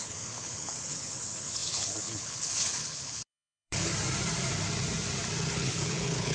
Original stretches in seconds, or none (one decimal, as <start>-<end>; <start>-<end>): 3.9-5.5